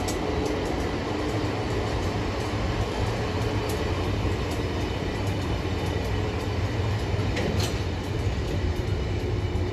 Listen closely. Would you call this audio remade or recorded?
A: recorded